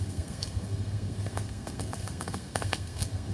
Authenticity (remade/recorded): remade